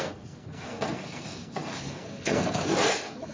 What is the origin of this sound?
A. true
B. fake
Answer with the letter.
B